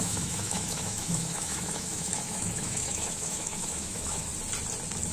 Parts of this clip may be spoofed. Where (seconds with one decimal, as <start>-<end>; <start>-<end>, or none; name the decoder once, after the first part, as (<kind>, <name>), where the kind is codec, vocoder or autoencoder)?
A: 0.0-4.3 (autoencoder, DAC-VAE)